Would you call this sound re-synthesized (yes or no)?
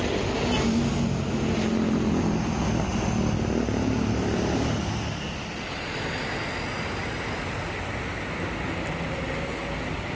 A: no